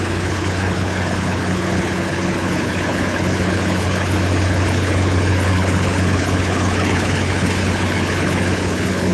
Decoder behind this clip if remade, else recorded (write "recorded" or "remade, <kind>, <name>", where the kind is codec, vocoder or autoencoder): remade, codec, HILCodec